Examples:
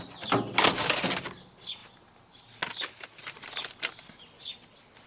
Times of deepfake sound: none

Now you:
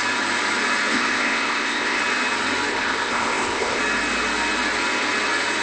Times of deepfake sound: 0.9-2.0 (codec, ZipCodec); 2.7-3.8

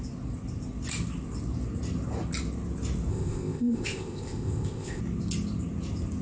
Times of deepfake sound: 3.1-5.0 (codec, ZipCodec)

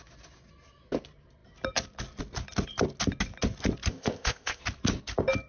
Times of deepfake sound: 3.9-4.6 (codec, ZipCodec)